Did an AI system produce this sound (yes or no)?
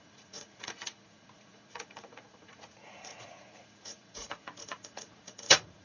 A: yes